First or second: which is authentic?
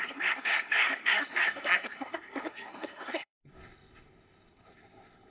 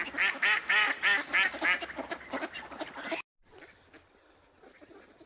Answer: second